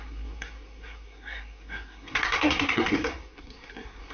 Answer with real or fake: fake